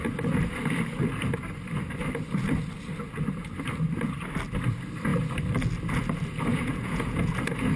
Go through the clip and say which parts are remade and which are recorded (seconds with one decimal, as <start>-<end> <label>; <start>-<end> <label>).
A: 0.0-6.5 recorded; 6.5-7.3 remade; 7.3-7.8 recorded